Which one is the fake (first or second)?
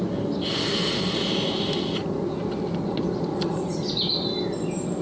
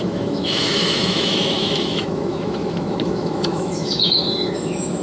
second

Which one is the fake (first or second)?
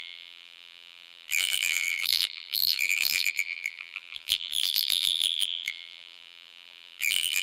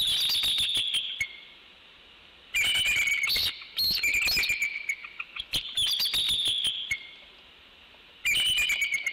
first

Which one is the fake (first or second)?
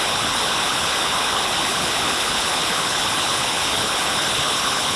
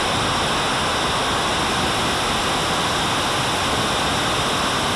first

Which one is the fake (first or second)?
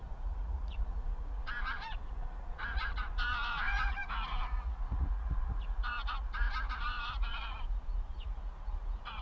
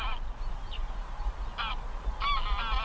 first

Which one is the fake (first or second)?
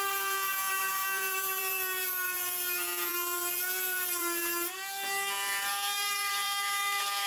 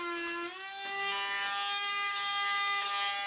first